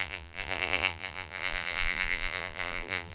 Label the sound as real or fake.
fake